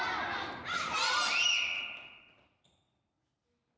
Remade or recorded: recorded